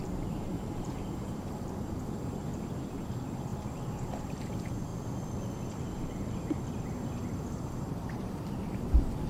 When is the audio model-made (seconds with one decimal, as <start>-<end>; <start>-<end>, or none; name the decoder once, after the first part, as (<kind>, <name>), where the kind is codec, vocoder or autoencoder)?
0.0-3.5 (vocoder, BigVGAN v2); 4.1-4.9; 5.7-9.3